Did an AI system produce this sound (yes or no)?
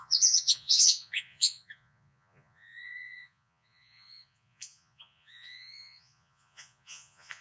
yes